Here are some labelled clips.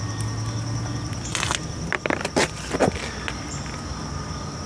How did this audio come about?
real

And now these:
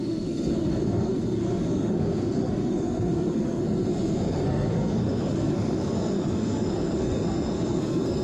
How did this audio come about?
fake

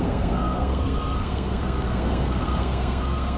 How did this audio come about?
fake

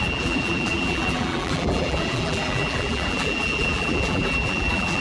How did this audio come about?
fake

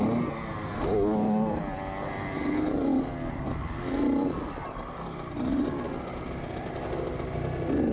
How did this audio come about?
real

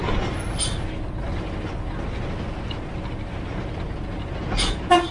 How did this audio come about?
real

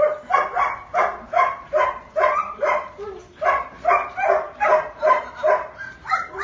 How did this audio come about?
fake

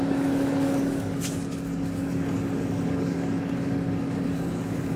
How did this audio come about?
fake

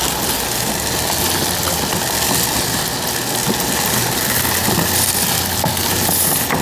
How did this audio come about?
real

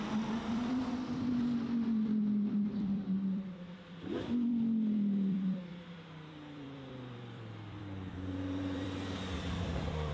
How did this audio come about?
fake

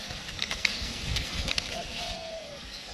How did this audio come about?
fake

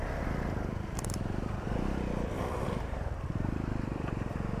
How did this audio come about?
fake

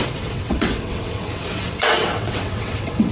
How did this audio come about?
fake